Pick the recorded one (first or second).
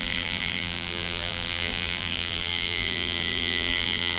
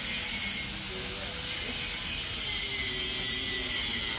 second